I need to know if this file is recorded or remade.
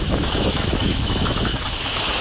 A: remade